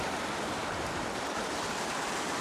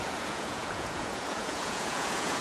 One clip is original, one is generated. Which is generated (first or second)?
second